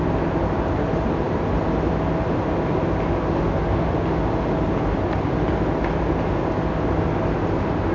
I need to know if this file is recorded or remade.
recorded